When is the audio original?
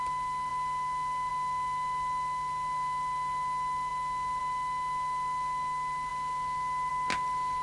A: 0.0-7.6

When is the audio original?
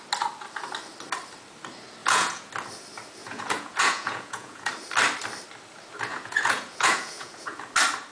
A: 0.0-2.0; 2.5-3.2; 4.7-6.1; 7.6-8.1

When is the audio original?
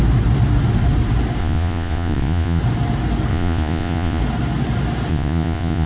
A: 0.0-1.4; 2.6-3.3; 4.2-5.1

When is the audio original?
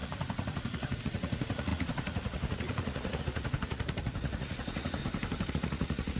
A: 5.0-5.5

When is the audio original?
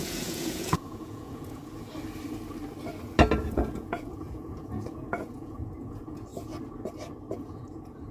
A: 1.6-3.4; 6.3-7.3